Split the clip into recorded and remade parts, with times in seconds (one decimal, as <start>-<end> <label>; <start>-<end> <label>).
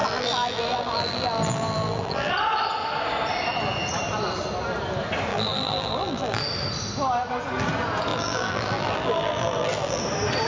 0.0-2.3 remade; 2.3-5.3 recorded; 5.3-6.4 remade; 6.4-8.1 recorded; 8.1-10.0 remade; 10.0-10.5 recorded